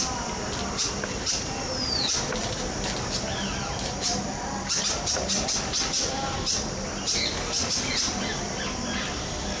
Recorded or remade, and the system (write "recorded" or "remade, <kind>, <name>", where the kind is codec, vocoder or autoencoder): recorded